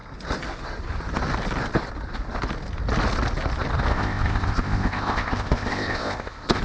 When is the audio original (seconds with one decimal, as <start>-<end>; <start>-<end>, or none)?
0.0-3.9